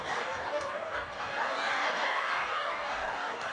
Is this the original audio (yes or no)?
no